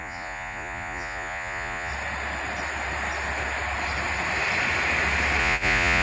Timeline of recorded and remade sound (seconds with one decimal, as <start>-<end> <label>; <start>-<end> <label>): 0.0-1.9 remade; 1.9-5.4 recorded; 5.4-6.0 remade

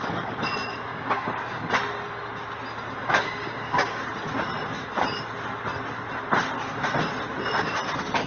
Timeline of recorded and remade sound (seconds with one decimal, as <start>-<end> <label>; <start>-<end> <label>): 0.0-0.9 recorded; 0.9-1.7 remade; 1.7-3.0 recorded; 3.0-4.0 remade; 4.0-8.3 recorded

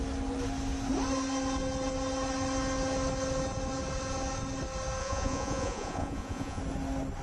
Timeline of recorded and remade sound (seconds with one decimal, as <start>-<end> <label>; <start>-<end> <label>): 0.0-5.0 recorded; 5.0-6.6 remade; 6.6-7.2 recorded

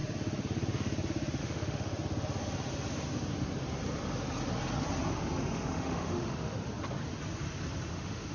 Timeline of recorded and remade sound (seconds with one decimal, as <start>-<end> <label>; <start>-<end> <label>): 0.0-1.4 recorded; 1.4-1.9 remade; 1.9-5.4 recorded; 5.4-6.6 remade; 6.6-7.9 recorded; 7.9-8.3 remade

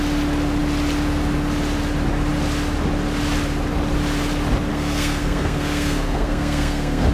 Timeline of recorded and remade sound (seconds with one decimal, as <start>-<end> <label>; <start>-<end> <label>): 0.0-4.7 recorded; 4.7-7.1 remade

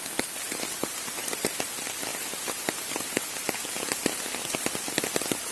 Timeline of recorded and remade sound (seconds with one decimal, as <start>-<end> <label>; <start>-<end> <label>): 0.0-2.1 remade; 2.1-5.5 recorded

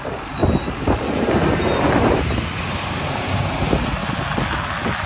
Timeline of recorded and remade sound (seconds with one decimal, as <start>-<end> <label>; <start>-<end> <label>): 0.0-0.4 recorded; 0.4-3.5 remade; 3.5-5.1 recorded

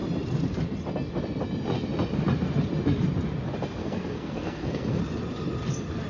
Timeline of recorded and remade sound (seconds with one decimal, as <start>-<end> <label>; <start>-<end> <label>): 0.0-3.8 recorded; 3.8-5.0 remade; 5.0-6.1 recorded